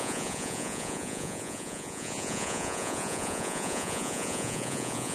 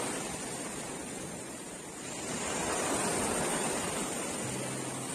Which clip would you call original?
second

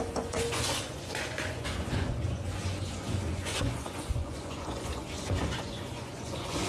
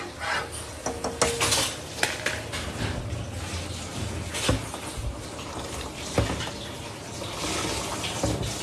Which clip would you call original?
second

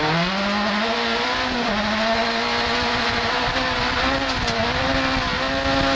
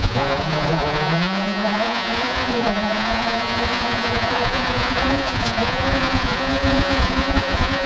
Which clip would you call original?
first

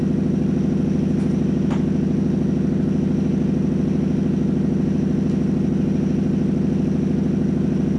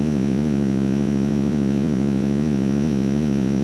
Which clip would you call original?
first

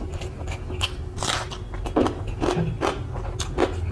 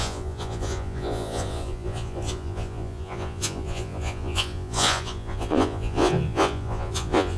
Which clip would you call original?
first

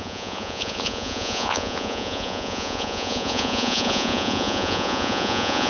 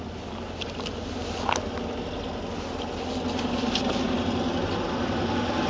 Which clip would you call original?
second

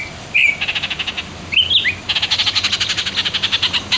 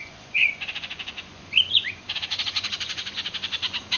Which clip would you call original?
first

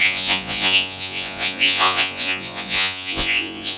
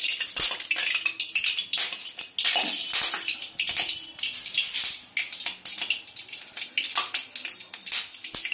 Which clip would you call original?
second